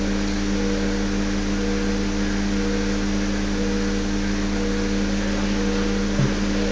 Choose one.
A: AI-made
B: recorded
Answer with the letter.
B